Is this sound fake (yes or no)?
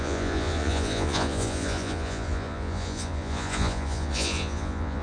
yes